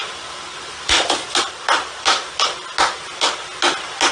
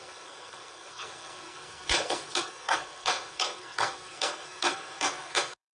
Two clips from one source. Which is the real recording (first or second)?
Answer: first